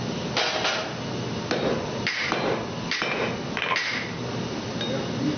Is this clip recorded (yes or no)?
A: yes